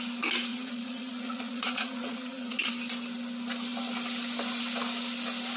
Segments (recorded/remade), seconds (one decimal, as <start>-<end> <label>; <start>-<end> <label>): 0.0-0.5 recorded; 0.5-2.7 remade; 2.7-5.6 recorded